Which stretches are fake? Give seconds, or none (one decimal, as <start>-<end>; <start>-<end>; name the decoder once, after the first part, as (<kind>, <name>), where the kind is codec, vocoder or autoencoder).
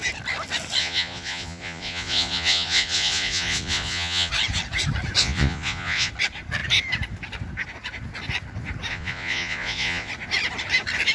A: 0.8-4.3 (vocoder, Vocos); 5.2-6.1; 8.9-10.1